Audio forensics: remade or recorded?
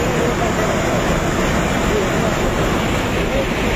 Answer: recorded